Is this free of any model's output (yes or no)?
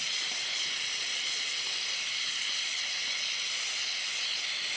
yes